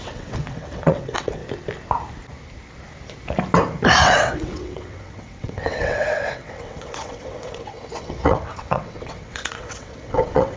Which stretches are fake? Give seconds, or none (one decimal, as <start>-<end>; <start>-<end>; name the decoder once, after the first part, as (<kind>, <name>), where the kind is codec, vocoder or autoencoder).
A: 0.0-1.4 (vocoder, WaveNeXt); 4.0-10.6